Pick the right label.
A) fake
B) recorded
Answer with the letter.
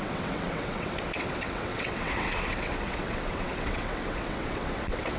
A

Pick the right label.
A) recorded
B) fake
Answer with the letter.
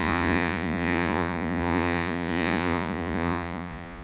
B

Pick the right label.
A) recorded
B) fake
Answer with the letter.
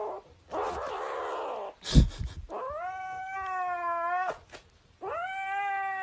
A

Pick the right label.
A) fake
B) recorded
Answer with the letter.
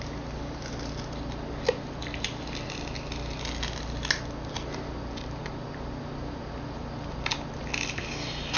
B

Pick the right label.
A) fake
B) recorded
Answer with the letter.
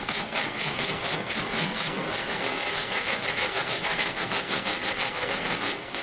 A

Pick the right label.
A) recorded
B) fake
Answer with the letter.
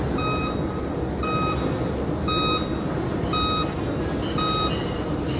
A